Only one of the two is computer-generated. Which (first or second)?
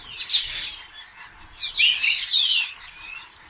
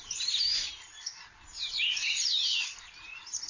second